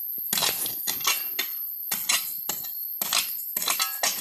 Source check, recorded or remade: recorded